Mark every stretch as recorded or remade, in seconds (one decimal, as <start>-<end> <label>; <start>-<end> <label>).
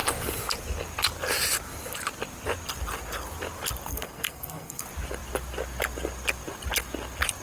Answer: 0.0-3.9 recorded; 3.9-4.8 remade; 4.8-7.4 recorded